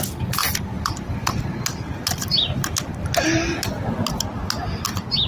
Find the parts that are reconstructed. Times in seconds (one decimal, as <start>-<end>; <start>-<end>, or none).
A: 0.4-3.4